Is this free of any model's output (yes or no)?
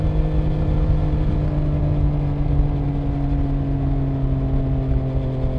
yes